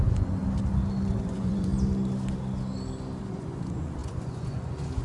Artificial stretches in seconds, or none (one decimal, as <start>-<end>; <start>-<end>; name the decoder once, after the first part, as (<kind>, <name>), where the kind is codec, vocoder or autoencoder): 0.0-0.4 (vocoder, Vocos); 1.1-1.7; 3.2-5.0